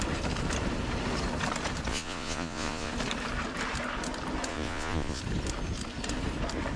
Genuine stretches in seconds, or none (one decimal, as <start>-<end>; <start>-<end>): 0.0-1.9; 2.9-4.5; 5.2-6.8